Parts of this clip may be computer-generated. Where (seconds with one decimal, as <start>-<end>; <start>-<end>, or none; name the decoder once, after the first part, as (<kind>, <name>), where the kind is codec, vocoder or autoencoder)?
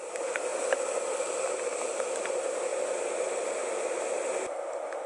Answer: none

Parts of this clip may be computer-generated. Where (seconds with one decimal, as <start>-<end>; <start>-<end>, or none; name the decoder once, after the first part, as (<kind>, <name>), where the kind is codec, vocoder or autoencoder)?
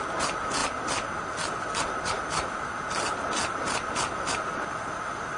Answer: none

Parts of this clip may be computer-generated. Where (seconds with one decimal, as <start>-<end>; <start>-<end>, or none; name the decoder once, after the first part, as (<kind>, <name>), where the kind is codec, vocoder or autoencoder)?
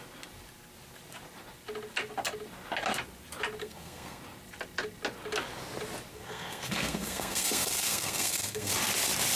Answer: 3.6-4.2 (codec, SNAC); 6.1-8.7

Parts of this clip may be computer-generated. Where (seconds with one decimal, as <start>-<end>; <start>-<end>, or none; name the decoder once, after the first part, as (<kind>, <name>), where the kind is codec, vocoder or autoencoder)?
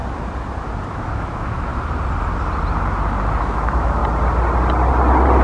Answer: 0.9-1.7 (autoencoder, DAC-VAE); 3.4-4.0